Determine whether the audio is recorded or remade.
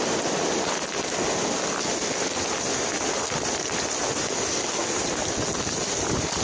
recorded